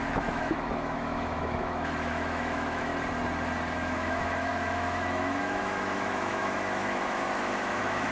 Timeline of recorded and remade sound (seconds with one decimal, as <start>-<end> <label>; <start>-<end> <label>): 0.0-2.9 remade; 2.9-3.8 recorded; 3.8-8.1 remade